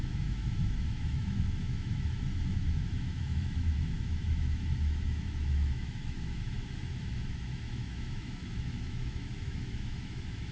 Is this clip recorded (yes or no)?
no